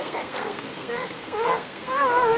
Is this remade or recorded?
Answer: remade